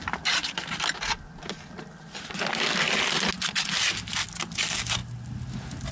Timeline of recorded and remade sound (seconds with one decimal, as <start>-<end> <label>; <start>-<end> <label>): 0.0-5.9 recorded